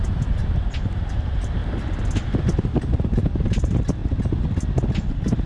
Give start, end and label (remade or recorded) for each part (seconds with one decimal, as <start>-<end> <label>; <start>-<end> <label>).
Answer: 0.0-1.6 remade; 1.6-2.4 recorded; 2.4-4.0 remade; 4.0-5.1 recorded; 5.1-5.5 remade